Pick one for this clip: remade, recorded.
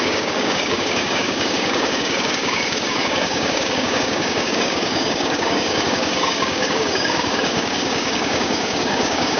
remade